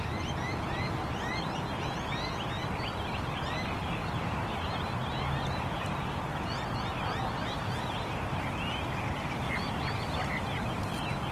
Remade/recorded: recorded